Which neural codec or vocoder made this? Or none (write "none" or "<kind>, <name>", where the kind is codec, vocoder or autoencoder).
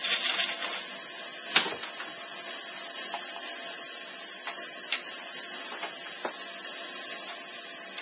none